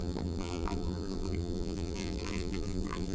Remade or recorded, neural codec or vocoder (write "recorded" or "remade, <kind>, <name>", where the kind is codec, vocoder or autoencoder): remade, vocoder, BigVGAN v2